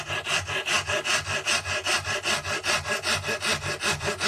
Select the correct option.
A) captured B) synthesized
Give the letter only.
A